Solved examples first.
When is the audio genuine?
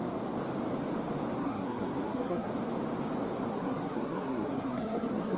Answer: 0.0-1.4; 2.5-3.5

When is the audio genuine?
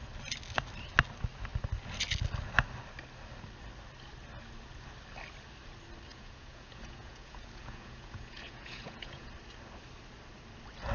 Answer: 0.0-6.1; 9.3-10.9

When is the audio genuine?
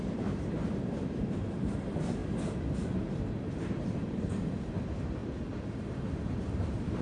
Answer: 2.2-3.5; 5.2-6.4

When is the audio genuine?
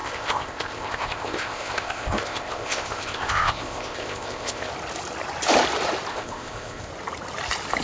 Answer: 4.7-6.1; 6.9-7.8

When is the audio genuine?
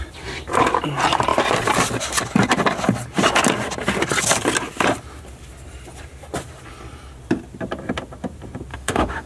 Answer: 0.0-8.7